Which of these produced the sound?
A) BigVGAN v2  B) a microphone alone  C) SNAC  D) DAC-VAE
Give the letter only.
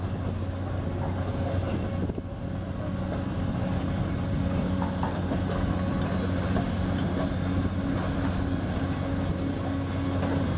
B